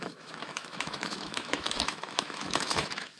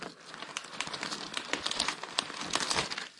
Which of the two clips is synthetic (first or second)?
first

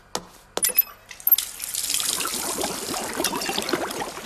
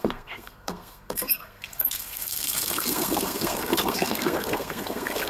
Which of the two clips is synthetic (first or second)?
second